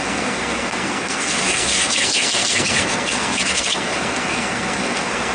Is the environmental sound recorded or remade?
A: remade